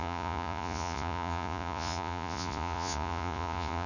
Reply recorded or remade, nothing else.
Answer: remade